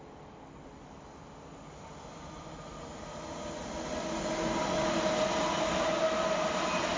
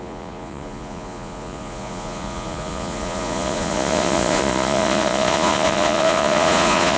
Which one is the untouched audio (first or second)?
first